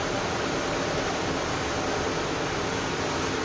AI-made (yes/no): no